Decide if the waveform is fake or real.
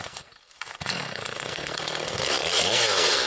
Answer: fake